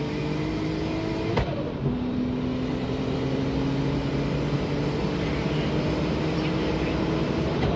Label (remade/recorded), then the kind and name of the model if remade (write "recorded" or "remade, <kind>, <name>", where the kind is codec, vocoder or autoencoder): recorded